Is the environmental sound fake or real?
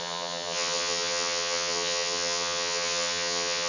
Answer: fake